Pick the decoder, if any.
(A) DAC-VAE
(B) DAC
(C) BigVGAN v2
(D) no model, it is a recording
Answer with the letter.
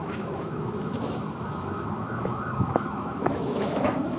A